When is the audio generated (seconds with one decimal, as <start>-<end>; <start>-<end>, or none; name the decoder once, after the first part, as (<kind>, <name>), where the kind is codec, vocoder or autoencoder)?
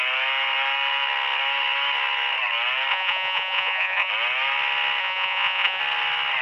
2.9-4.1 (vocoder, Vocos); 5.0-5.8